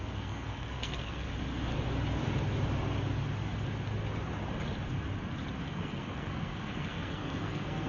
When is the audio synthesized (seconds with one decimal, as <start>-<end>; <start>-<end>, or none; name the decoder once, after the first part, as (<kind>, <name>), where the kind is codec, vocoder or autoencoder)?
0.0-1.3 (codec, SNAC); 5.6-7.9